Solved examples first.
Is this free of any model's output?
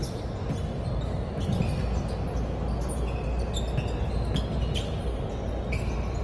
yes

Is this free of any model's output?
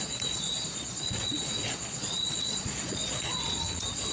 no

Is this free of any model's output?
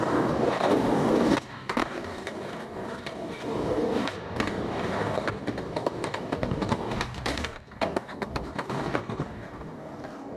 no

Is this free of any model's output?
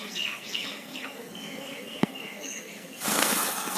no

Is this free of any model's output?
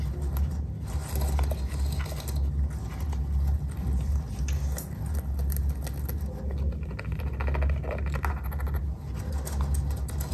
yes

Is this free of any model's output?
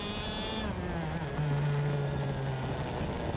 yes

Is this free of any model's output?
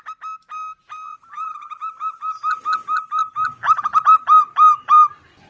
yes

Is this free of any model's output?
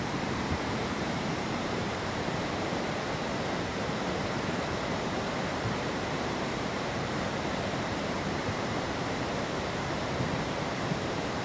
no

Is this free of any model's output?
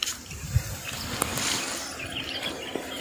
yes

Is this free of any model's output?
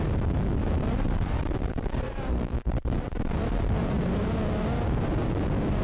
no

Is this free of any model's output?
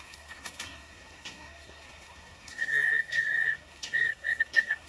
no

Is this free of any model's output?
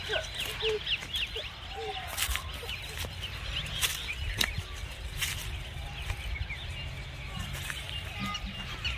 yes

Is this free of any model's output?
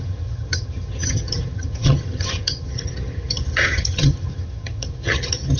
no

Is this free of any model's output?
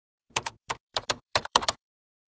no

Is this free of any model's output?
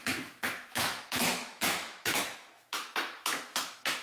no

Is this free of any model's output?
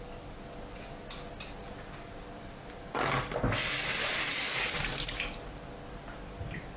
yes